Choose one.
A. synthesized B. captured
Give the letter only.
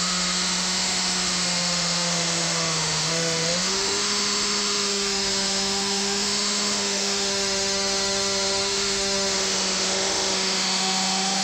A